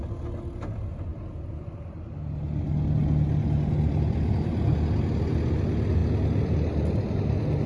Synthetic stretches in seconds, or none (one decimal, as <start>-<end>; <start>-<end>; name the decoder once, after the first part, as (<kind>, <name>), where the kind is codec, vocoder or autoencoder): none